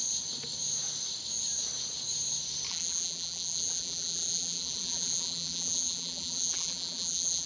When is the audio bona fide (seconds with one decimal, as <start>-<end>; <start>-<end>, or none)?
0.0-2.7